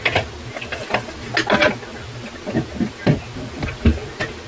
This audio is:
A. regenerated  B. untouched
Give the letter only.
B